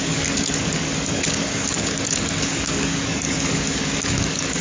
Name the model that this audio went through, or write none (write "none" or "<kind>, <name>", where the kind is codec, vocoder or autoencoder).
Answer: codec, DAC